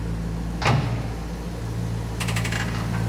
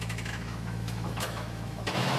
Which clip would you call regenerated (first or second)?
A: second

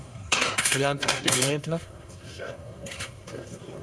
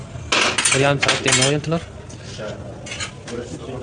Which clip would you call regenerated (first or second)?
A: first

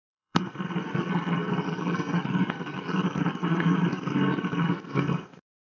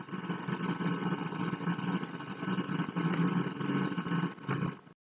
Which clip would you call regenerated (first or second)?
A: first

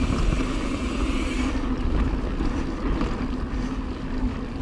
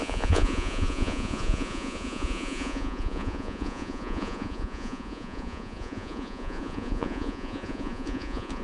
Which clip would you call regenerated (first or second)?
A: second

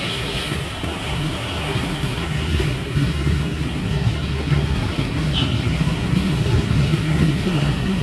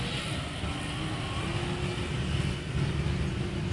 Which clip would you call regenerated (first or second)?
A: first